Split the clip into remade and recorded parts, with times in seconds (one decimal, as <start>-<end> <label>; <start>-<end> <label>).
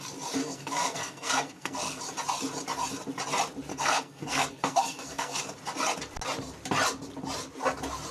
0.0-0.4 recorded; 0.4-2.0 remade; 2.0-3.7 recorded; 3.7-5.4 remade; 5.4-8.1 recorded